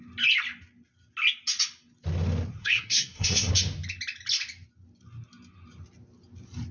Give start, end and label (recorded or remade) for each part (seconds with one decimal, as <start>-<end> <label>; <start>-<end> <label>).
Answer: 0.0-2.6 recorded; 2.6-3.5 remade; 3.5-6.7 recorded